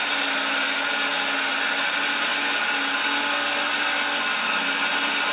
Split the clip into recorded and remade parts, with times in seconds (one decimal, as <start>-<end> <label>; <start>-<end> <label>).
0.0-5.3 recorded